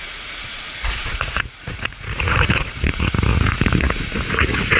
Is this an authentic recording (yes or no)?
no